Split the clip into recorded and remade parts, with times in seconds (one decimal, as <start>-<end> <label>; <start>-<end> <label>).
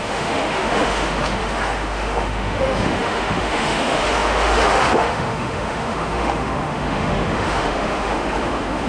0.0-8.9 remade